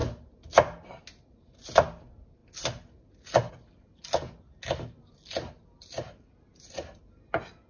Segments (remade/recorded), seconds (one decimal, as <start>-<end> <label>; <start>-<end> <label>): 0.0-7.7 recorded